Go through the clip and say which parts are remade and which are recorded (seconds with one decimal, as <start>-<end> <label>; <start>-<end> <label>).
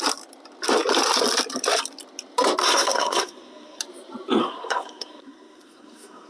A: 0.0-2.6 recorded; 2.6-3.8 remade; 3.8-4.4 recorded; 4.4-6.3 remade